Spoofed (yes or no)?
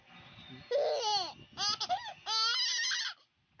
no